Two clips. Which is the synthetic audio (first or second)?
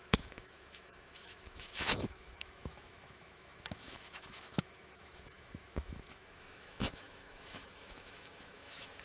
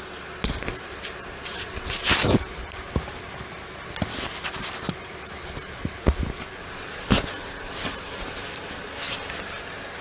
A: first